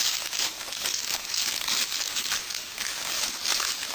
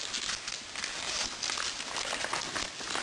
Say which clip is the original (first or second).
second